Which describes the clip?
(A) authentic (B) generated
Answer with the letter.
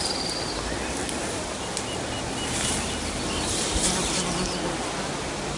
A